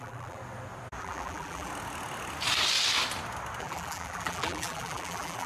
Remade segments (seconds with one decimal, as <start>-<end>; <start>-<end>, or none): 0.0-0.4; 1.0-1.7; 3.6-5.5